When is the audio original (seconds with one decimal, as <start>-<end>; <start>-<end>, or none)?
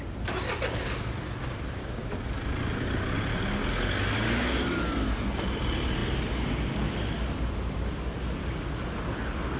0.0-9.6